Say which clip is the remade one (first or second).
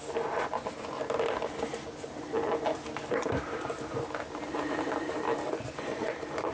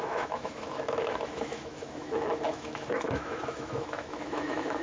second